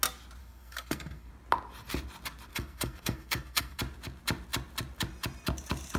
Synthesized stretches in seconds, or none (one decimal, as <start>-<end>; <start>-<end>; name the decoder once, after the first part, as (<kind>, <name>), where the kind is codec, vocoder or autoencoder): 0.4-1.3 (codec, SNAC); 2.5-3.8